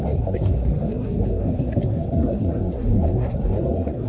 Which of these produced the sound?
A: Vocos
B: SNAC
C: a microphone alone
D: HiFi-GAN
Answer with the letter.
B